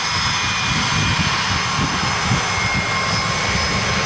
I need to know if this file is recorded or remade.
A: recorded